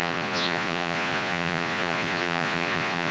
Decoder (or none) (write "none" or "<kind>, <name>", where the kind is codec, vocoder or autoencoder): vocoder, Vocos